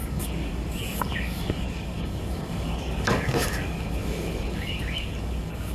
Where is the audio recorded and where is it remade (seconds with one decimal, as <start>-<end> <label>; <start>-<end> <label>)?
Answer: 0.0-5.7 remade